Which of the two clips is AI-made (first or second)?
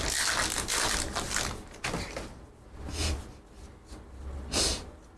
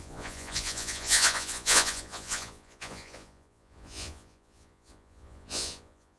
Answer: second